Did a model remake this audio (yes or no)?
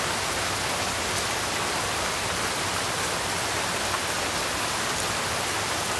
no